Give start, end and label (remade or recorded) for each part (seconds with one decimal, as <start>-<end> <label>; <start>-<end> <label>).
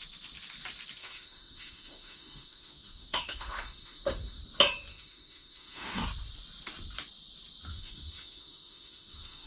0.0-1.0 recorded; 1.0-4.4 remade; 4.4-4.9 recorded; 4.9-6.0 remade; 6.0-7.7 recorded; 7.7-9.5 remade